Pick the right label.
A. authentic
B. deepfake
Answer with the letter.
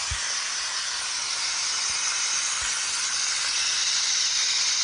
A